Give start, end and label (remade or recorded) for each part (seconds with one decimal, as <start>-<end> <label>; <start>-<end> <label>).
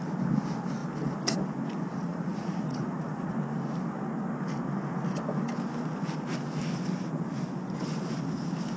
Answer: 0.0-2.0 recorded; 2.0-3.3 remade; 3.3-8.8 recorded